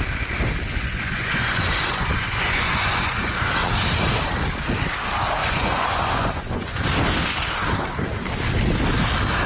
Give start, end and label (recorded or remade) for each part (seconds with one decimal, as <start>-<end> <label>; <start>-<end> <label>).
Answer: 0.0-0.7 recorded; 0.7-3.5 remade; 3.5-5.4 recorded; 5.4-6.8 remade; 6.8-9.5 recorded